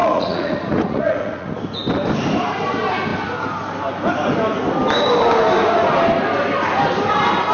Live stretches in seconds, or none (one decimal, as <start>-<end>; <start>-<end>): 1.6-7.5